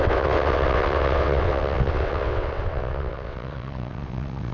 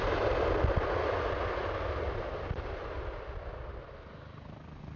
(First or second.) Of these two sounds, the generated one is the first